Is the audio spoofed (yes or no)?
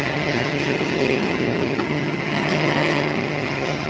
yes